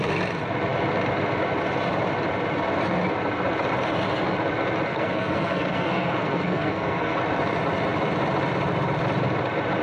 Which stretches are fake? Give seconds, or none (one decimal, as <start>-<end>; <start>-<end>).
4.9-7.2